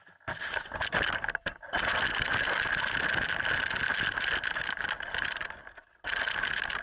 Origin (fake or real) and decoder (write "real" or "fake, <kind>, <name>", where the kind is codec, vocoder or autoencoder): real